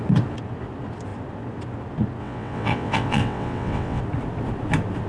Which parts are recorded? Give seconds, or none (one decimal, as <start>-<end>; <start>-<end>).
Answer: 0.0-2.2; 4.0-5.1